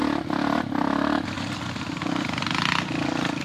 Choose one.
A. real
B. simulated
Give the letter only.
A